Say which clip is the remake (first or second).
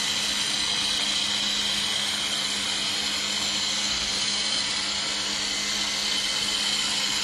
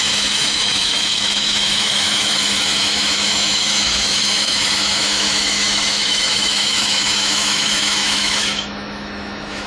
second